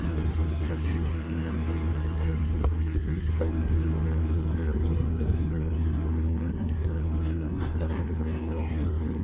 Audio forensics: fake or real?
fake